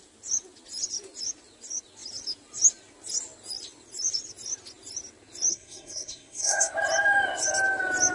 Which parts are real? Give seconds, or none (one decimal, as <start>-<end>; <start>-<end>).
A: 0.0-5.5; 6.7-8.1